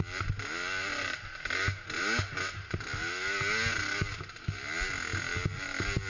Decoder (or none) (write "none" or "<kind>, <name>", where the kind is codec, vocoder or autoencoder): none